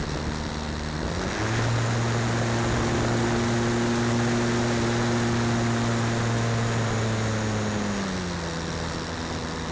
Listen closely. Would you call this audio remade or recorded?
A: recorded